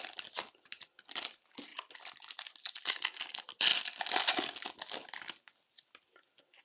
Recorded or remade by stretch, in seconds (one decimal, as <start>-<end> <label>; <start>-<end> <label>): 0.0-6.6 recorded